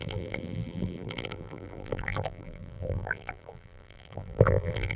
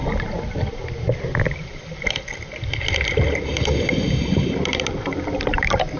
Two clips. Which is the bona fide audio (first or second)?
second